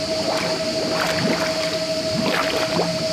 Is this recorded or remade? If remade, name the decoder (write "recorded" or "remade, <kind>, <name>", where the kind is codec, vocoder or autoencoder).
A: recorded